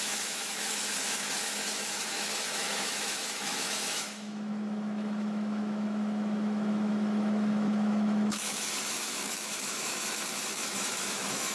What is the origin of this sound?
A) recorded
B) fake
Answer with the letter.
B